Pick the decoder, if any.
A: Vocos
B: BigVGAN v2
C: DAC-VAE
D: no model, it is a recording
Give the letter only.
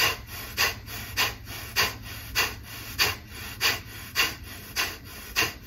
D